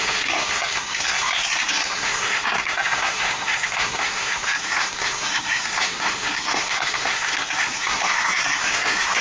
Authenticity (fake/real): fake